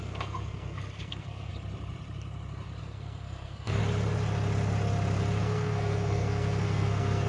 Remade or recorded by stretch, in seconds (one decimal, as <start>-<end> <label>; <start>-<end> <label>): 0.0-1.5 remade; 1.5-2.8 recorded; 2.8-3.8 remade; 3.8-5.4 recorded; 5.4-7.3 remade